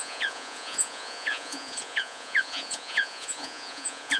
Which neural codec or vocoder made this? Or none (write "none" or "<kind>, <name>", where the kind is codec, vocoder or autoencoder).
vocoder, Vocos